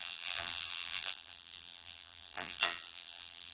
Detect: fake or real fake